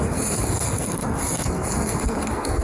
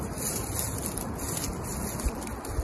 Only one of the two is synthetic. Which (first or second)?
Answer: first